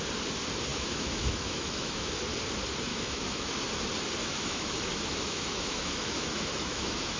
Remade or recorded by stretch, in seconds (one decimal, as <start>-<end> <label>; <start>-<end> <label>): 0.0-0.7 recorded; 0.7-2.1 remade; 2.1-2.9 recorded; 2.9-3.5 remade; 3.5-4.2 recorded; 4.2-7.2 remade